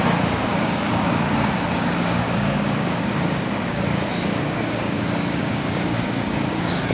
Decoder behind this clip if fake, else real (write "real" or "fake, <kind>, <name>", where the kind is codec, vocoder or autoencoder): fake, codec, DAC